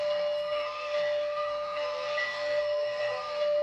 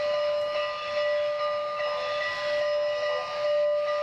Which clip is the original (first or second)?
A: second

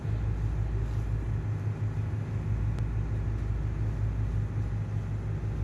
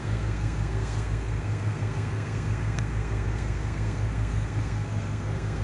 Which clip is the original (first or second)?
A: first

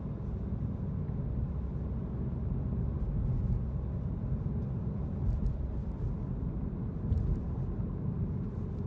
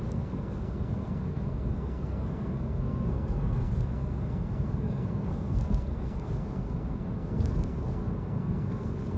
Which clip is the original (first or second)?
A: first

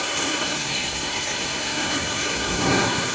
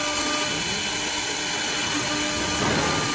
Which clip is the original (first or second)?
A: second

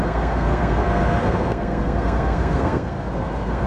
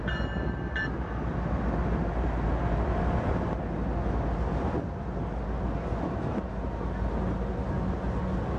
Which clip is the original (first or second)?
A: second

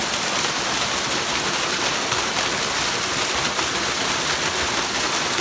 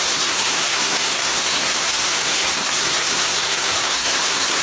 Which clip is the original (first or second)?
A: first